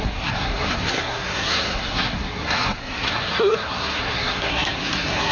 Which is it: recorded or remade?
remade